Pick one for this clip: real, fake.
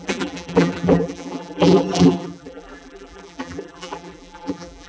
fake